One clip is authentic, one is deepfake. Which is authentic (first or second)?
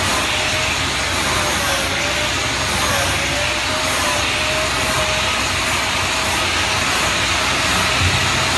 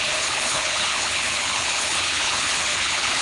first